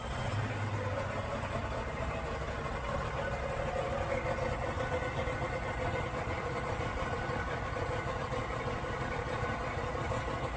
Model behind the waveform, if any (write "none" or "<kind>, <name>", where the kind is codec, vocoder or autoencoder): none